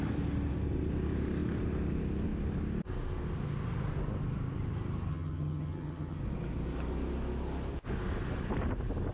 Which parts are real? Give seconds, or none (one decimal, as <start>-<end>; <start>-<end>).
0.0-5.1; 6.2-9.1